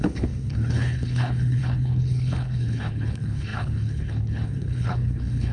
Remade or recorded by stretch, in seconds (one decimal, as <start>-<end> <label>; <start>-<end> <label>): 0.0-5.5 remade